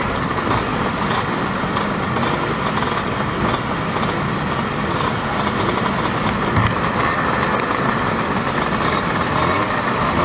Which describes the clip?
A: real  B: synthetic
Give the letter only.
A